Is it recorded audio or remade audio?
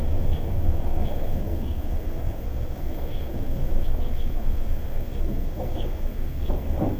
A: remade